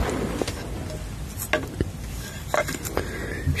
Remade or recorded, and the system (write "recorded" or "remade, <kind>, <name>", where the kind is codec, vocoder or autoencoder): recorded